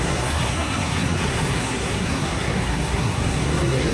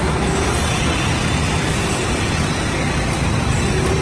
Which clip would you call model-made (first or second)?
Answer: first